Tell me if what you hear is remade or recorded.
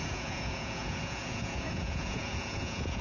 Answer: remade